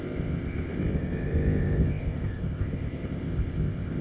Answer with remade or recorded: remade